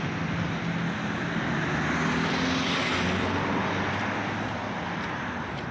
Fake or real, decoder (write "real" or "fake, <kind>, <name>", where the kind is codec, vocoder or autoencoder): real